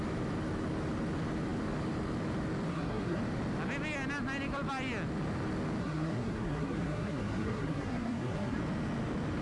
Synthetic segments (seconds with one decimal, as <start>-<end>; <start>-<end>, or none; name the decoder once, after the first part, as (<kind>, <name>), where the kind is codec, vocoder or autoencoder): 2.7-3.2 (codec, SNAC); 5.8-8.6